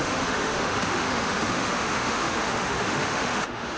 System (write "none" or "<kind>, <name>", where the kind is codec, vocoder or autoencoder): autoencoder, DAC-VAE